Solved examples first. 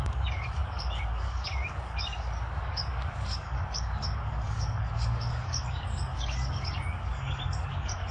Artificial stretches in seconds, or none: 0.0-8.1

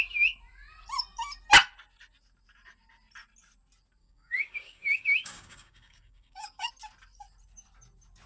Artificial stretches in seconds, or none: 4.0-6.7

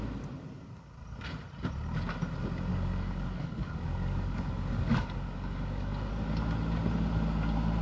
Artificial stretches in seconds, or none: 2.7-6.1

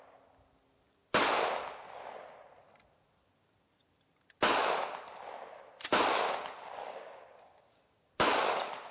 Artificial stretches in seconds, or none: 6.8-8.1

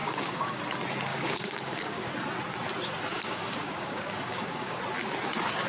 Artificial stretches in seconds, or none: 0.0-0.6; 1.1-2.1; 3.1-4.8

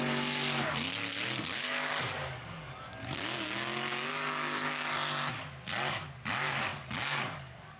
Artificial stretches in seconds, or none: 0.9-4.9; 6.7-7.8

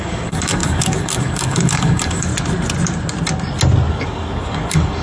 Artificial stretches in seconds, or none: 0.0-2.3; 3.9-5.0

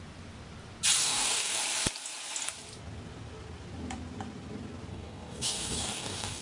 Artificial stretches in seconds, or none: 1.0-1.6; 4.9-6.4